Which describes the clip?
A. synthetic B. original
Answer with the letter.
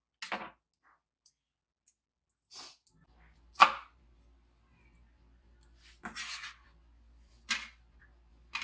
B